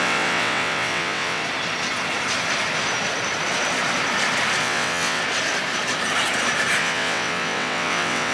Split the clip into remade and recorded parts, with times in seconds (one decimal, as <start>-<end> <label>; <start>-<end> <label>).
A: 0.0-1.4 remade; 1.4-4.6 recorded; 4.6-5.2 remade; 5.2-6.8 recorded; 6.8-8.3 remade